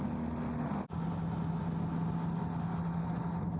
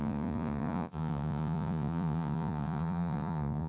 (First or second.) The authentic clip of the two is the first